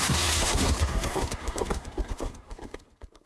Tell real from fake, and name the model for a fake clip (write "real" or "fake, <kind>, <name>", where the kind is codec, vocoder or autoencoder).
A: fake, codec, SNAC